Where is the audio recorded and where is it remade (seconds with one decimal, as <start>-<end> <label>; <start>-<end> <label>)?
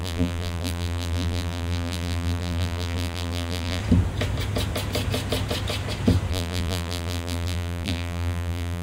0.0-3.8 remade; 3.8-6.3 recorded; 6.3-8.8 remade